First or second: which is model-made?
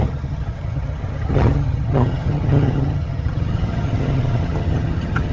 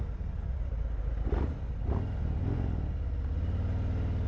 first